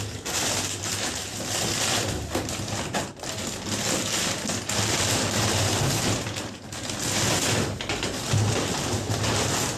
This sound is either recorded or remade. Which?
recorded